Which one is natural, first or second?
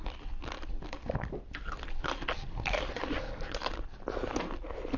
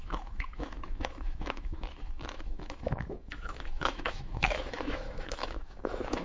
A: first